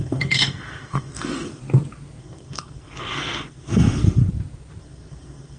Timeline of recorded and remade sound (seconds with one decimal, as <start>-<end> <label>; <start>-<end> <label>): 0.0-1.6 remade; 1.6-2.2 recorded; 2.2-4.2 remade; 4.2-4.8 recorded; 4.8-5.6 remade